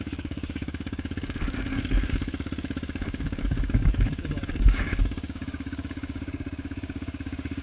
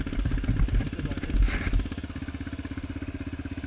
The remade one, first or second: first